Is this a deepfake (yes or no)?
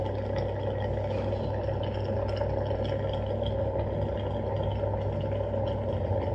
no